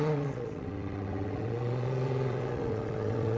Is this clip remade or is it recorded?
remade